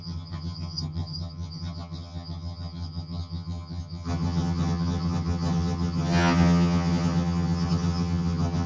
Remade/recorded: remade